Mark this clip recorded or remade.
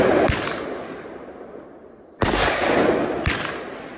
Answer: recorded